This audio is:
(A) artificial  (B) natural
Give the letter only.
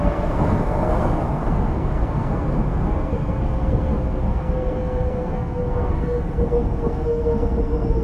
A